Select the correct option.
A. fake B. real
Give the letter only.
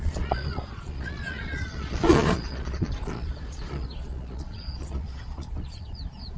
A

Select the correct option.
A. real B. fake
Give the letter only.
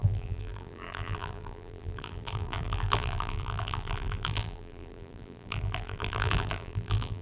B